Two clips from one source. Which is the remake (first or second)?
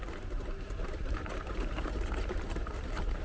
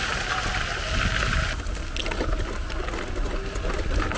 first